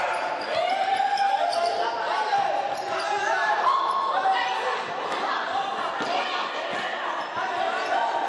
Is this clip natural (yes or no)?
yes